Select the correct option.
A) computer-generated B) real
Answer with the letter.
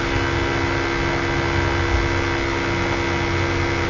B